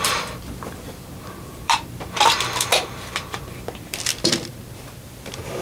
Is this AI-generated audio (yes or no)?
yes